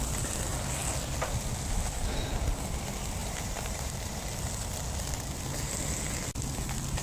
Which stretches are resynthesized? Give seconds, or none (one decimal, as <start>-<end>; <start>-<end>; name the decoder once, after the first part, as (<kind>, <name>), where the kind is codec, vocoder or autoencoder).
3.2-4.2 (vocoder, BigVGAN v2)